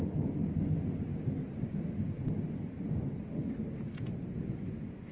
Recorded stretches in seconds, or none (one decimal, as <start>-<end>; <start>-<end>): 0.0-5.1